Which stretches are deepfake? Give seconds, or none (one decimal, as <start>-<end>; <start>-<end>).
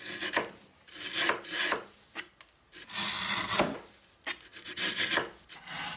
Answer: 4.5-5.1